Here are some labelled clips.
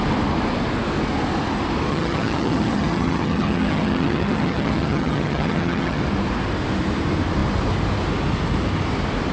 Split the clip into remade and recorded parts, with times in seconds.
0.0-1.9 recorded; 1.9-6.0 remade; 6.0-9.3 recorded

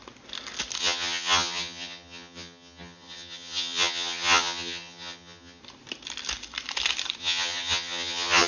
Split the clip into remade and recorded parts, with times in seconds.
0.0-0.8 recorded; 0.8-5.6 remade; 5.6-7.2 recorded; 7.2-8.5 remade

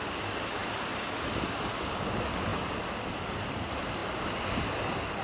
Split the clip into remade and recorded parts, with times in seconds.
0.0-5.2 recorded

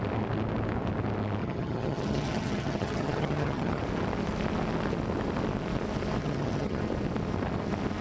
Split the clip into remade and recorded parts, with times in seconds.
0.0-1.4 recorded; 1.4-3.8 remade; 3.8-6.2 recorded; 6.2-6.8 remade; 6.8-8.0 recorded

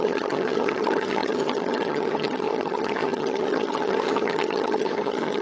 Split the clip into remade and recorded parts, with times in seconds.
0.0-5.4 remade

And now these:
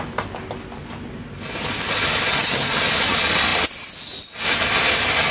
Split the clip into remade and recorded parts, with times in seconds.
0.0-2.3 recorded; 2.3-2.8 remade; 2.8-5.3 recorded